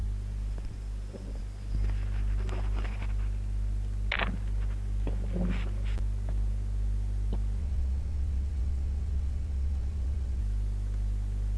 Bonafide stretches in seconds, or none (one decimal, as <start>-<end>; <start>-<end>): 0.0-7.6; 10.4-11.6